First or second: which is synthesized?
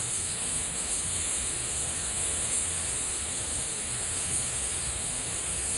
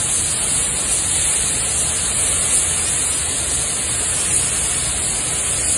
first